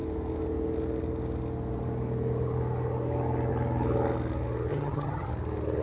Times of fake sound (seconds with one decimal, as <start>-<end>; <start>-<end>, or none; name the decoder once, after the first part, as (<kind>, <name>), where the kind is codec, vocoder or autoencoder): 4.7-5.3 (vocoder, HiFi-GAN)